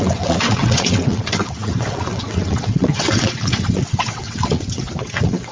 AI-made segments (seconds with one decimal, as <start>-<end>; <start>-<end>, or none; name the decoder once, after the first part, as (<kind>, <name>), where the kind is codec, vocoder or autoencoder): 0.0-5.5 (vocoder, WaveNeXt)